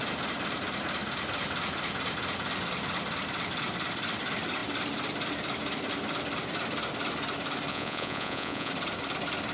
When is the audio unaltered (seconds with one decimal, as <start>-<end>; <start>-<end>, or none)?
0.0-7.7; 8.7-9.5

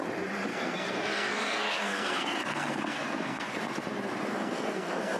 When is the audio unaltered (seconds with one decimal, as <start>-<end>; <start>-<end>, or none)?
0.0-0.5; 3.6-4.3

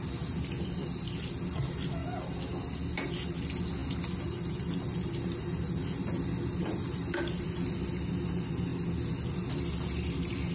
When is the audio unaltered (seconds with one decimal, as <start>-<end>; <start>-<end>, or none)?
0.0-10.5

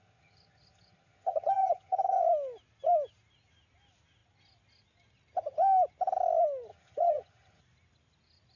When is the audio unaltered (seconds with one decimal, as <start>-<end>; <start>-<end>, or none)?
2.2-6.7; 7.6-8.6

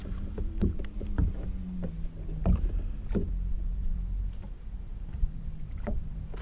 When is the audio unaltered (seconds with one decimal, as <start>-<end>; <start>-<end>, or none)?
1.2-3.5

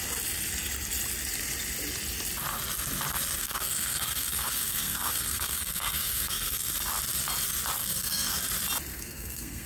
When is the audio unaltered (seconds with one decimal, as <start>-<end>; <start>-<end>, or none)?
0.0-3.4; 6.7-7.8; 8.4-8.9

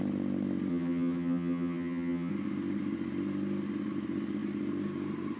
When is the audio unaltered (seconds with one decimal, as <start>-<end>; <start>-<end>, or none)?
0.0-0.7; 2.3-5.4

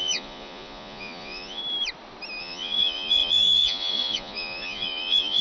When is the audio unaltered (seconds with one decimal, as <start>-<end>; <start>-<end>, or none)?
1.6-2.4